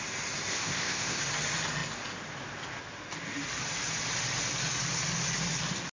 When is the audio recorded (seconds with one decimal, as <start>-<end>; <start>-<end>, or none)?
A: 0.0-0.5; 1.2-6.0